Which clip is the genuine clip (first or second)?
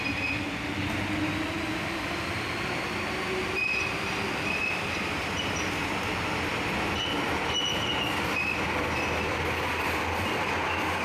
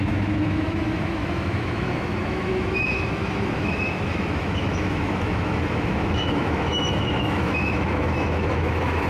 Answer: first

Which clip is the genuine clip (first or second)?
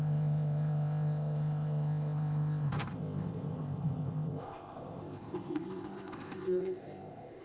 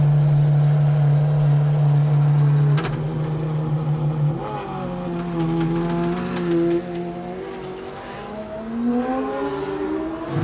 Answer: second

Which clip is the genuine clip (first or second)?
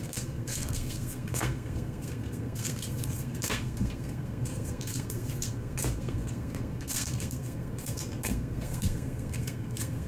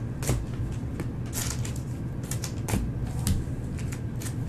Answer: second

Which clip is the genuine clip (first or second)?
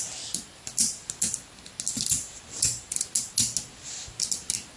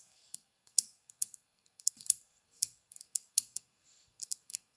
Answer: first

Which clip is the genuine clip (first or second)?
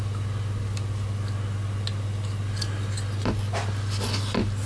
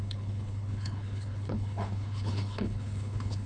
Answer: first